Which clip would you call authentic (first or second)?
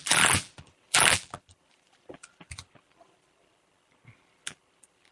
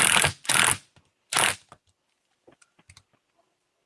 second